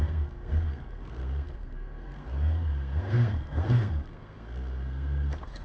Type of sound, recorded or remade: remade